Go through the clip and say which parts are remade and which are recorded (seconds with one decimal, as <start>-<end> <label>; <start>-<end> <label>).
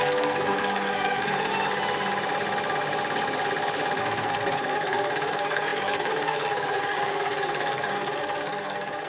0.0-1.5 remade; 1.5-4.0 recorded; 4.0-9.1 remade